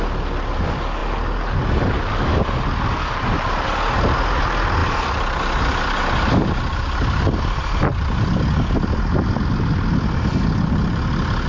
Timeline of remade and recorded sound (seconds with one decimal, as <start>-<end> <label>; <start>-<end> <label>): 0.0-11.5 recorded